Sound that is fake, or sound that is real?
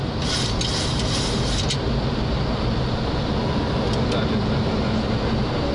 real